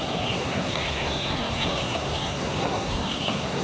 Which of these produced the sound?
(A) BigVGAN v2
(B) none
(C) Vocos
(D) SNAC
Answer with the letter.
D